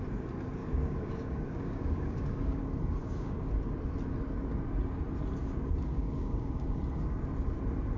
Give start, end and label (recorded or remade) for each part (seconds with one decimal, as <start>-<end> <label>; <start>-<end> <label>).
0.0-0.6 recorded; 0.6-2.6 remade; 2.6-3.0 recorded; 3.0-3.5 remade; 3.5-5.4 recorded; 5.4-6.8 remade; 6.8-8.0 recorded